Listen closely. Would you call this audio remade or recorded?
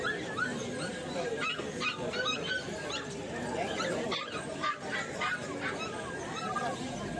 recorded